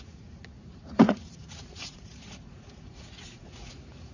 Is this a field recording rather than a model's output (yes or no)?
no